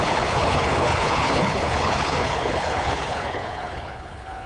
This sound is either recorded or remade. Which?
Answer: remade